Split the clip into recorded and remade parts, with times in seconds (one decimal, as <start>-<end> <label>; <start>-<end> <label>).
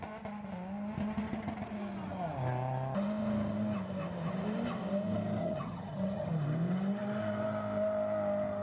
0.0-5.4 recorded; 5.4-6.3 remade; 6.3-8.6 recorded